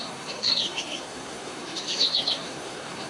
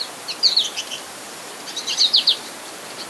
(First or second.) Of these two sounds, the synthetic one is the first